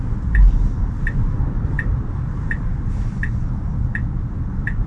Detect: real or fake real